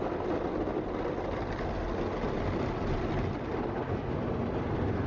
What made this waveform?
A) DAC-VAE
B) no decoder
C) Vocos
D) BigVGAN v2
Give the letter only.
B